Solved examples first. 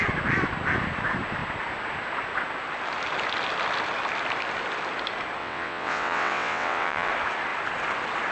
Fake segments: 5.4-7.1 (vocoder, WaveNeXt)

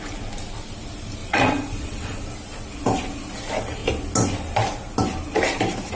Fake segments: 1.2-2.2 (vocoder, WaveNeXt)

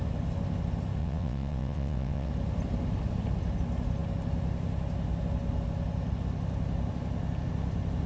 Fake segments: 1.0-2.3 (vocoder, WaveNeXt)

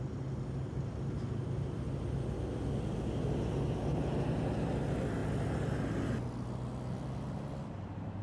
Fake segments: none